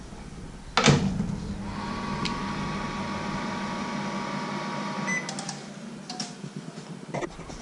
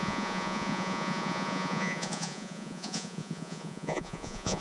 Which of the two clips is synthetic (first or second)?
second